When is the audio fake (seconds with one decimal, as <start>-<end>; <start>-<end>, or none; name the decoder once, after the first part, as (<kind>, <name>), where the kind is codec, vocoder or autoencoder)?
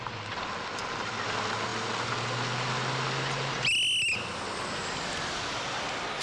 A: none